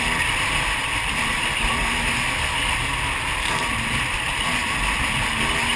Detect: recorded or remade recorded